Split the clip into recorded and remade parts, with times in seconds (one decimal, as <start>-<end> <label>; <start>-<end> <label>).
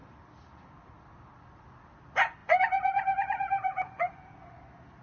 0.0-2.4 recorded; 2.4-4.2 remade; 4.2-5.0 recorded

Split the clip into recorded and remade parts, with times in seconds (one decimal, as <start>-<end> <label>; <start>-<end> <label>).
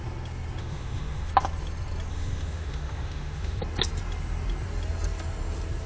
0.0-0.6 recorded; 0.6-1.3 remade; 1.3-2.1 recorded; 2.1-3.6 remade; 3.6-5.9 recorded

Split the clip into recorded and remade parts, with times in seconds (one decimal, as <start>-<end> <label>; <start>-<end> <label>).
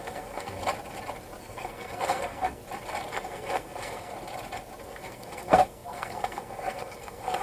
0.0-0.6 remade; 0.6-1.4 recorded; 1.4-2.6 remade; 2.6-3.1 recorded; 3.1-4.1 remade; 4.1-4.8 recorded; 4.8-7.4 remade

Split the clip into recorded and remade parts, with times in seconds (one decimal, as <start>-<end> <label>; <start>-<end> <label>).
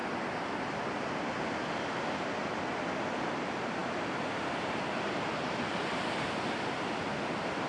0.0-1.1 remade; 1.1-3.8 recorded; 3.8-6.4 remade; 6.4-7.7 recorded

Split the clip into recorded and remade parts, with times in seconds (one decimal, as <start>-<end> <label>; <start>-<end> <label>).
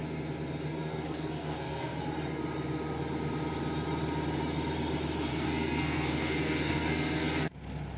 0.0-0.7 recorded; 0.7-2.0 remade; 2.0-5.3 recorded; 5.3-7.5 remade; 7.5-8.0 recorded